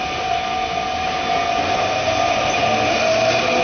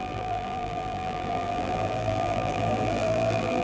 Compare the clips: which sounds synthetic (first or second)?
second